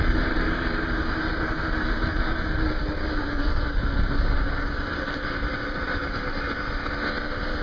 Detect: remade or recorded remade